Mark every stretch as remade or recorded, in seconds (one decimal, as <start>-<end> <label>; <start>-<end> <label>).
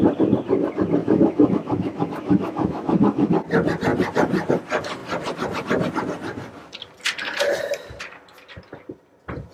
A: 0.0-1.0 recorded; 1.0-3.3 remade; 3.3-9.5 recorded